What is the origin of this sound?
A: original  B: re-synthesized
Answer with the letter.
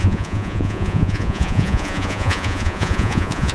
B